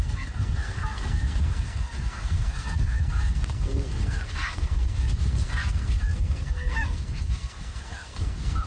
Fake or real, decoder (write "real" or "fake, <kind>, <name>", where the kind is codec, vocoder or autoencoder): fake, codec, SNAC